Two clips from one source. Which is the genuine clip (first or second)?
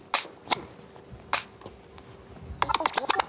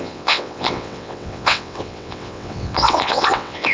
first